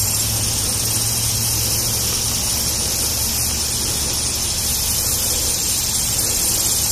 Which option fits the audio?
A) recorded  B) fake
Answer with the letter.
A